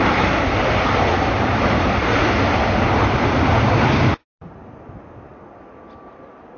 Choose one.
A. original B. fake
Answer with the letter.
A